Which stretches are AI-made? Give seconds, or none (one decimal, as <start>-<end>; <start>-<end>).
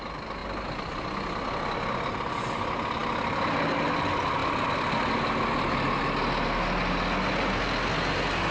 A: none